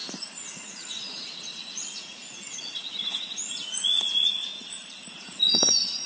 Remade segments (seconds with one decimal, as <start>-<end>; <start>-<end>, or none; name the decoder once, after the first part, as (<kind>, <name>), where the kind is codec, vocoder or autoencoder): 0.0-4.5 (vocoder, Vocos); 5.1-6.1